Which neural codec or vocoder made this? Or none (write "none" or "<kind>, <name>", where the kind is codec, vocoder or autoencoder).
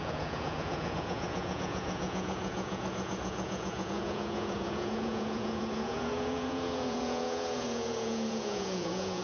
vocoder, Vocos